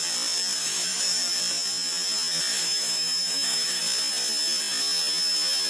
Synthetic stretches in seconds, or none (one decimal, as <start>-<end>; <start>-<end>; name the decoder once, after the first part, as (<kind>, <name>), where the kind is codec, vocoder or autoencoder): 0.6-1.4 (autoencoder, DAC-VAE); 2.5-3.8